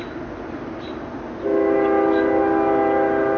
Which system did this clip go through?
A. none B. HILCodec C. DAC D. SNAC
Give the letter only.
A